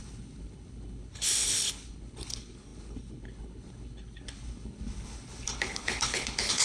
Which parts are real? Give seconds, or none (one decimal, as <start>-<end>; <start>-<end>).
none